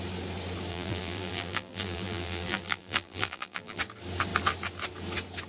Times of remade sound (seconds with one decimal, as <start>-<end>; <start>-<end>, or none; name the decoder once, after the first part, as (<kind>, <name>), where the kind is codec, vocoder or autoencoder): 0.7-3.8 (vocoder, BigVGAN v2)